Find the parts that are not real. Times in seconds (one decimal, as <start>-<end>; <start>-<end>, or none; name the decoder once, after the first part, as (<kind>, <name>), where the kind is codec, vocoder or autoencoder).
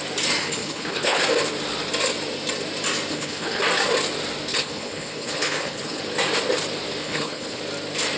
0.4-1.2 (codec, HILCodec); 3.1-3.6; 4.5-6.0; 7.0-7.6